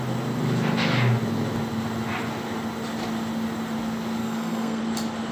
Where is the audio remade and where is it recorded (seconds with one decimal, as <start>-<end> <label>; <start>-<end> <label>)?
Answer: 0.0-4.2 recorded; 4.2-4.8 remade; 4.8-5.3 recorded